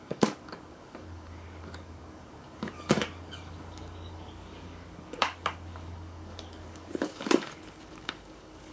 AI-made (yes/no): yes